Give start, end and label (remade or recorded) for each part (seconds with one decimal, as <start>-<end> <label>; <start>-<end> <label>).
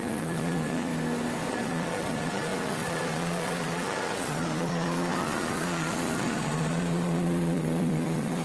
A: 0.0-0.9 remade; 0.9-1.5 recorded; 1.5-8.4 remade